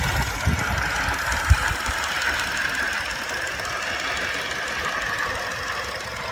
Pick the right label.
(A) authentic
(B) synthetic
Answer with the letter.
A